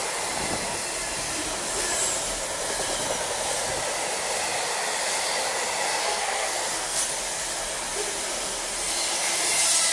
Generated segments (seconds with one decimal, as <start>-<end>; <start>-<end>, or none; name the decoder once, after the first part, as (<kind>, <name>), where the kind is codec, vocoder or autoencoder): 6.0-7.0 (codec, SNAC)